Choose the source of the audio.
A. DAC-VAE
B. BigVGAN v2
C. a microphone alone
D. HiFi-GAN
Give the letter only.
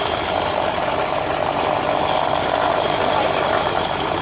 B